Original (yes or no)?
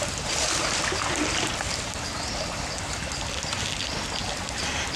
yes